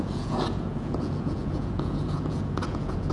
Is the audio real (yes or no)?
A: no